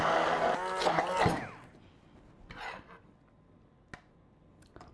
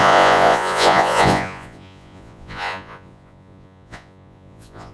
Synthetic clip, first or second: second